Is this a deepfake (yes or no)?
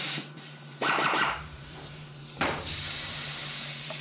yes